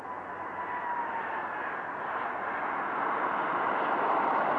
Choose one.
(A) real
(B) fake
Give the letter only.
A